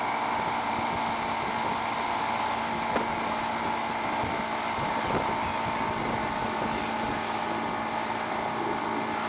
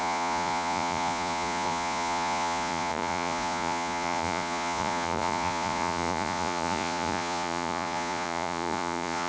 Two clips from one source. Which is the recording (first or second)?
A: first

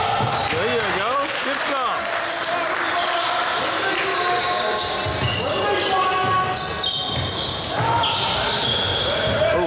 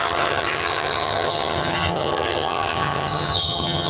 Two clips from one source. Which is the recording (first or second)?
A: first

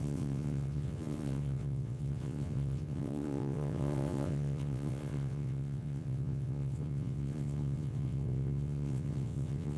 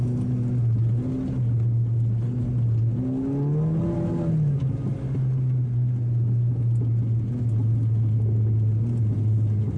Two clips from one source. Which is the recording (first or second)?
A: second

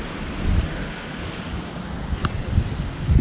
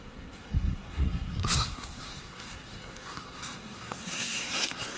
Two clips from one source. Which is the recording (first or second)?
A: first